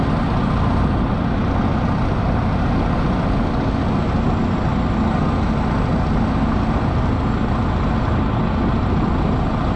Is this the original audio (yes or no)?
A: yes